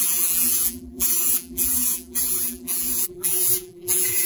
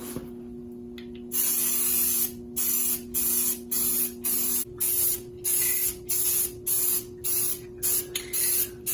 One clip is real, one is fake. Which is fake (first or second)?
first